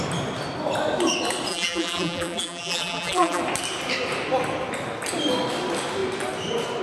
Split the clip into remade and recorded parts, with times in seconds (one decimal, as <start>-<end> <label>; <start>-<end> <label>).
0.0-1.5 recorded; 1.5-3.4 remade; 3.4-6.8 recorded